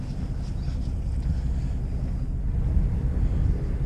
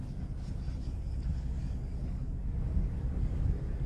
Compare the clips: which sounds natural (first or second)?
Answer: first